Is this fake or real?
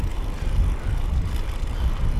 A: real